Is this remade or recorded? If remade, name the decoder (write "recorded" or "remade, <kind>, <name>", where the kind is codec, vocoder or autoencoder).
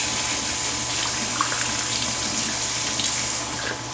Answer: recorded